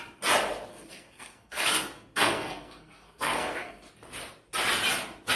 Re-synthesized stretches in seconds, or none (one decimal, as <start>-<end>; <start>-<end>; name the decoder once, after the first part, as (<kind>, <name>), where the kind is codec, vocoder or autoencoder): 0.7-3.9 (codec, SNAC)